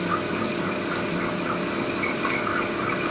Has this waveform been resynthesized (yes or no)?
no